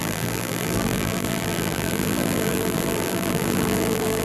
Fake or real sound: fake